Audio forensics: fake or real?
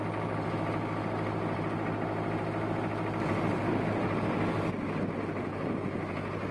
real